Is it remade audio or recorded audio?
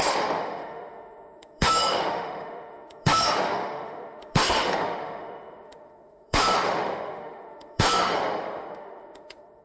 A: remade